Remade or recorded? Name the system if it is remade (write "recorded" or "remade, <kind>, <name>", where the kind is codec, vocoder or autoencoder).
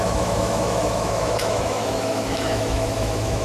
remade, autoencoder, DAC-VAE